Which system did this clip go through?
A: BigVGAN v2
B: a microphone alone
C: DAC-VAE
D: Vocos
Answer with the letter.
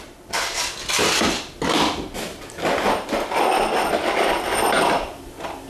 B